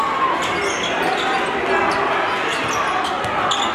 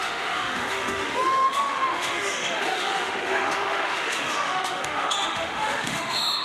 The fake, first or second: second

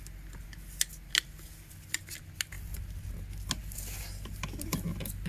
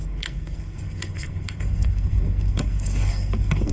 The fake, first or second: second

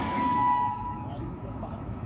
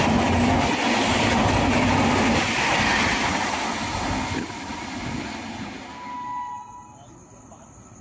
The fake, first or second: first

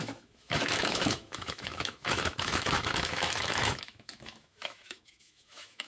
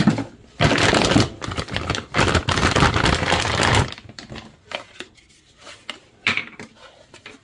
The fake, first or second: first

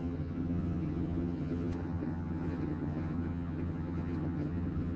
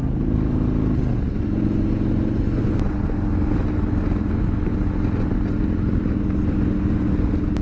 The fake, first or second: first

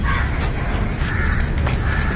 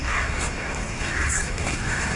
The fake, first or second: second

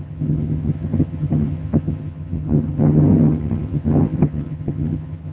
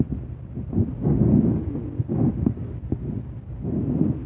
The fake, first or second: first